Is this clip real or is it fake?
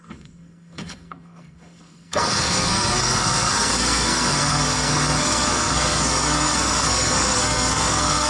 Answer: fake